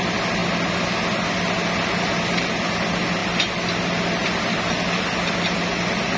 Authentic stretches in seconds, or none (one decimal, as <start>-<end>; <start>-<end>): 0.0-6.2